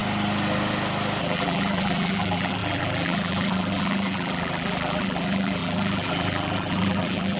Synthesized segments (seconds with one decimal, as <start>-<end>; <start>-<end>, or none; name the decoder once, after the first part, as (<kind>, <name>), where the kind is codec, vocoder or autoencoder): 1.2-7.4 (vocoder, BigVGAN v2)